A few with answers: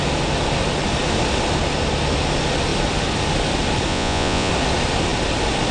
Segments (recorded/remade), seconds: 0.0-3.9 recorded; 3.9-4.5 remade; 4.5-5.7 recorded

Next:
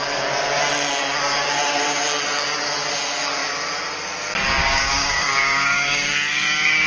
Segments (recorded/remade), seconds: 0.0-4.6 recorded; 4.6-6.9 remade

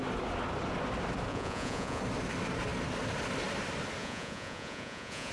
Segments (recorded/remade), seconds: 0.0-1.3 recorded; 1.3-2.0 remade; 2.0-4.0 recorded; 4.0-5.3 remade

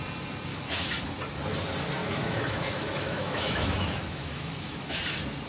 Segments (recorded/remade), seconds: 0.0-0.5 recorded; 0.5-1.0 remade; 1.0-2.0 recorded; 2.0-5.0 remade; 5.0-5.5 recorded

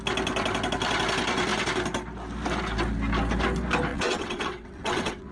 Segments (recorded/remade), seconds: 0.0-3.9 recorded; 3.9-5.3 remade